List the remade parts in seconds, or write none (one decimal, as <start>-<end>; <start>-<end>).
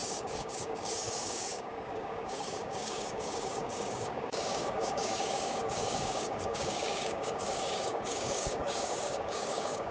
0.0-9.9